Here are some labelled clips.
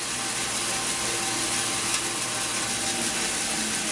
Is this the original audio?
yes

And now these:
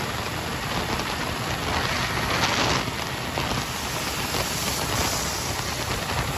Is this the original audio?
yes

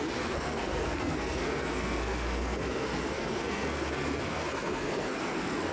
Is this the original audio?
no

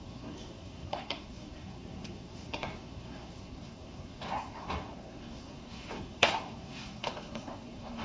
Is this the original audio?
no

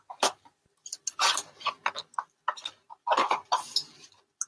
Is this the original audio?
yes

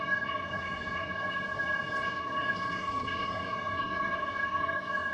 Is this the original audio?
no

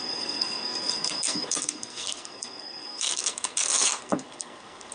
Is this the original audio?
no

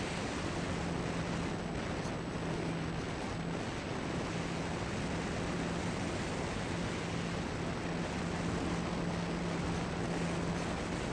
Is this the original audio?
yes